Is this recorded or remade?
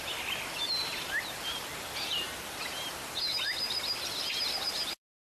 remade